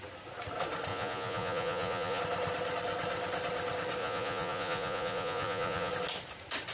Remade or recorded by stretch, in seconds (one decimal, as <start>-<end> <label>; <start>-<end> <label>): 0.0-0.9 recorded; 0.9-2.2 remade; 2.2-4.0 recorded; 4.0-5.9 remade; 5.9-6.7 recorded